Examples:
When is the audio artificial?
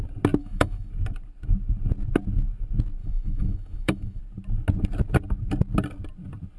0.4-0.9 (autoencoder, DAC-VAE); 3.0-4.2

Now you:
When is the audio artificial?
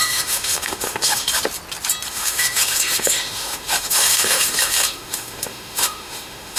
0.0-1.3 (autoencoder, DAC-VAE); 2.1-6.6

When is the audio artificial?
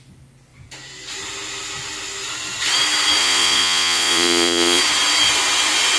3.2-4.8 (vocoder, Vocos)